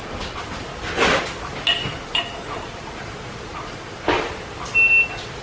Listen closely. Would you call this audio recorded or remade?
recorded